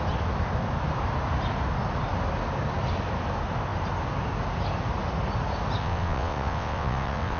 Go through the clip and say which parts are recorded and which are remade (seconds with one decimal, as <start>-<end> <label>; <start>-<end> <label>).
0.0-5.8 recorded; 5.8-7.4 remade